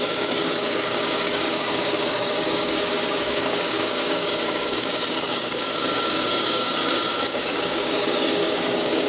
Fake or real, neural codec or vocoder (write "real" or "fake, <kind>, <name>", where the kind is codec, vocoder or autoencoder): fake, codec, DAC